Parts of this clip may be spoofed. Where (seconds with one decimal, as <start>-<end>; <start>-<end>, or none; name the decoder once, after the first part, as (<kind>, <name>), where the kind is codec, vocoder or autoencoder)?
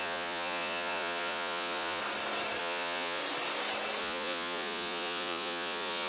0.0-2.0 (vocoder, Vocos); 2.6-3.2; 4.0-6.1